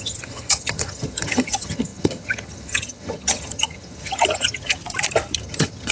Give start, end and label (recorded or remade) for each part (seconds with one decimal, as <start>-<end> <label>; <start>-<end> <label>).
0.0-4.8 remade; 4.8-5.4 recorded; 5.4-5.9 remade